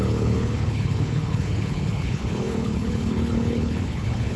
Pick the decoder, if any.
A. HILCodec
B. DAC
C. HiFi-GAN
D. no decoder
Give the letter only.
A